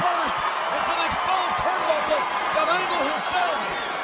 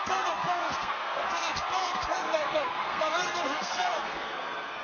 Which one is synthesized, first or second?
second